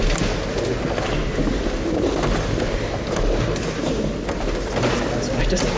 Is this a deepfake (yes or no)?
no